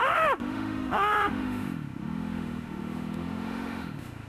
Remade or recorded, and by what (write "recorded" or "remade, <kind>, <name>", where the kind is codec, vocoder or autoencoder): remade, autoencoder, DAC-VAE